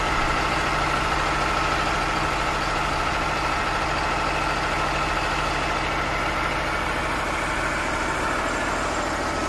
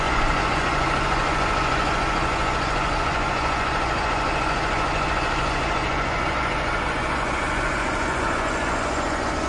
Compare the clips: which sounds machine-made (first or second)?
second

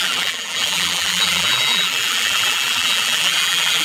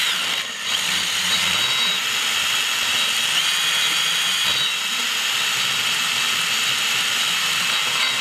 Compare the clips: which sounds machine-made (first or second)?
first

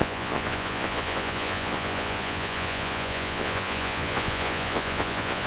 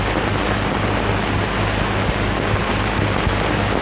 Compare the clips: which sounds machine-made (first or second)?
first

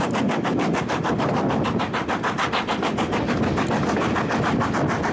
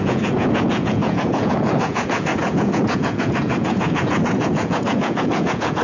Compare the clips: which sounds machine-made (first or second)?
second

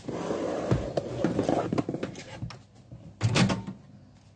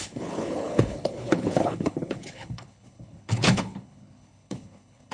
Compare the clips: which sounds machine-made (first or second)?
second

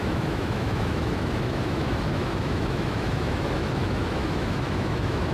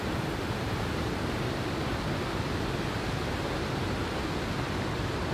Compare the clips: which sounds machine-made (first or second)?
first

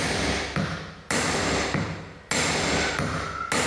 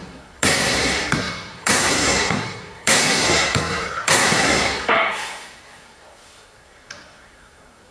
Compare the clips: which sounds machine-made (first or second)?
second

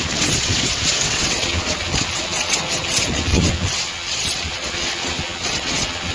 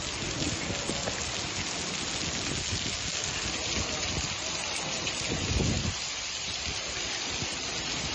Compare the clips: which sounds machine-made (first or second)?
first